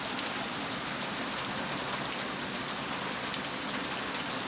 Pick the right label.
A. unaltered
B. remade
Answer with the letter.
A